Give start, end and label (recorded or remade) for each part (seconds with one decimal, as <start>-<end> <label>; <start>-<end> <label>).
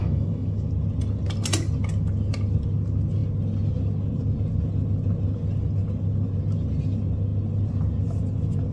0.0-0.7 remade; 0.7-8.7 recorded